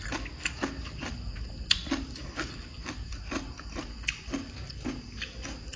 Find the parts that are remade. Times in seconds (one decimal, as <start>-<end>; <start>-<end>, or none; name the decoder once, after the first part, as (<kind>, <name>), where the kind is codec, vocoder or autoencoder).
none